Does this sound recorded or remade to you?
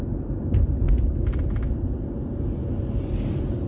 recorded